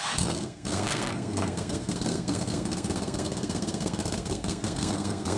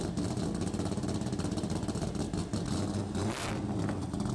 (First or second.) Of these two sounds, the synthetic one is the first